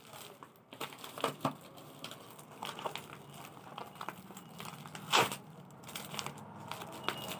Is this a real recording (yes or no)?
yes